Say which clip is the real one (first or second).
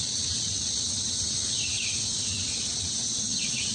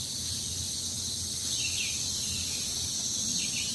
second